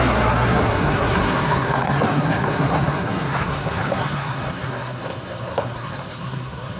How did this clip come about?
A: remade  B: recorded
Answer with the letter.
A